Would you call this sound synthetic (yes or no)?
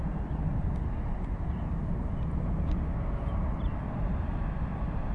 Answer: no